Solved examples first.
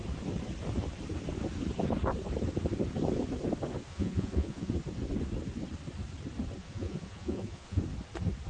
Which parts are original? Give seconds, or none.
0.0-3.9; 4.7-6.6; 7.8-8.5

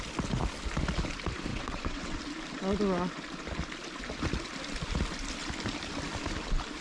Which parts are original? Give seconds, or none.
0.0-1.5; 2.2-6.8

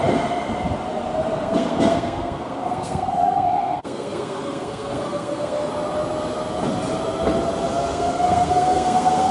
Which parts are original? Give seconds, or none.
0.0-1.3; 5.7-7.9

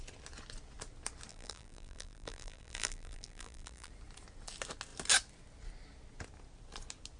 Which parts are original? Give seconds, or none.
0.0-1.3; 3.9-7.2